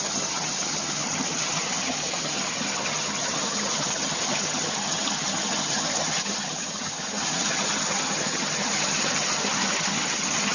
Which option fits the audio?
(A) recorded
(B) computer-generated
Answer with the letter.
B